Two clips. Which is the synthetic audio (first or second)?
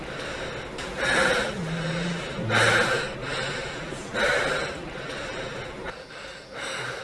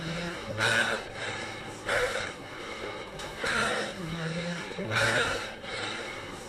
second